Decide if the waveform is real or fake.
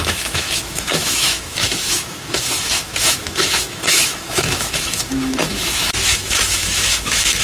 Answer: fake